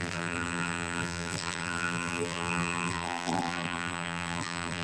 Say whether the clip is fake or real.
fake